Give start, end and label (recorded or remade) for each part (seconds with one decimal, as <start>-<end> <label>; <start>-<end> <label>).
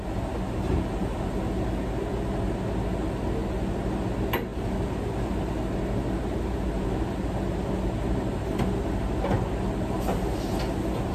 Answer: 0.0-11.1 recorded